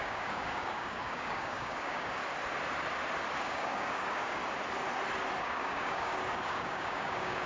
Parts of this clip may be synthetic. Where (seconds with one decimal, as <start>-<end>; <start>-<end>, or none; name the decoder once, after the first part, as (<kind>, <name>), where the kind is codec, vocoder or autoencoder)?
0.0-2.2 (codec, DAC); 3.4-4.4; 5.4-7.5